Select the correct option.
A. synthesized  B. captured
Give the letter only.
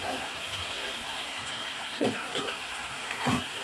A